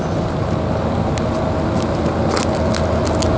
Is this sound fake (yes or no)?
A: no